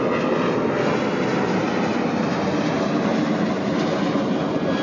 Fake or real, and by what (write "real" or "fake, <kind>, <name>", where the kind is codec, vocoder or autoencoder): real